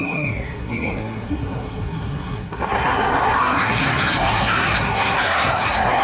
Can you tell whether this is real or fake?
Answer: fake